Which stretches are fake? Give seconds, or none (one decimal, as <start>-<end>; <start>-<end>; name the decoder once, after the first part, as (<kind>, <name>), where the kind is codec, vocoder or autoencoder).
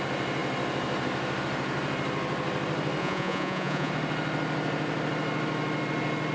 3.0-3.9 (vocoder, Vocos)